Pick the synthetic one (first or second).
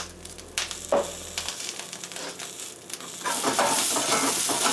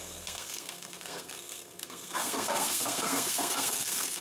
second